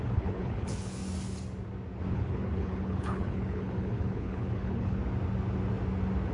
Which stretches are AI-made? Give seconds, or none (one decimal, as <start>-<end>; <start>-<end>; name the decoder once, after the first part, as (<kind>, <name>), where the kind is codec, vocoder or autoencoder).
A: 0.0-1.0 (codec, HILCodec); 2.1-5.0